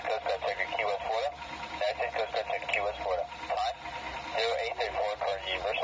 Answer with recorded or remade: recorded